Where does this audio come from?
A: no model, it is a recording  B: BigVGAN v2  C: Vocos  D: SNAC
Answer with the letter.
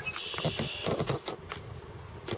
A